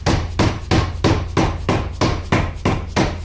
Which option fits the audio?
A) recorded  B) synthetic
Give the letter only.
A